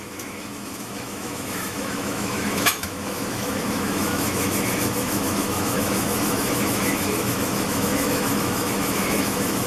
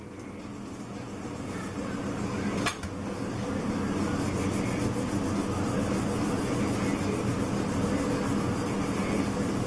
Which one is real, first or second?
second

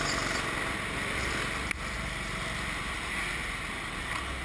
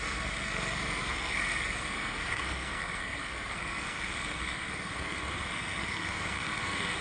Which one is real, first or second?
first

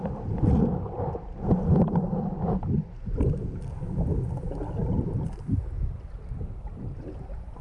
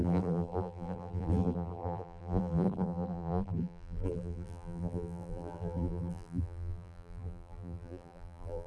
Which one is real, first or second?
first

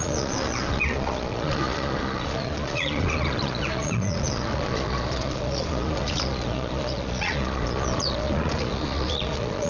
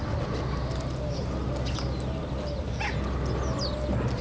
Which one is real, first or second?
second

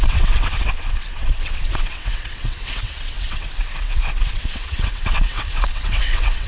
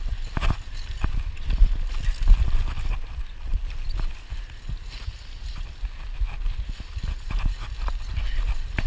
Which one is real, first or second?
second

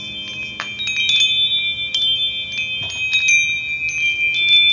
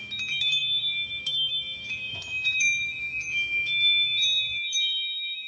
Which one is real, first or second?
first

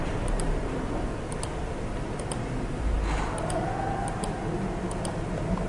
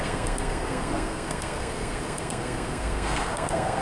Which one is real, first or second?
first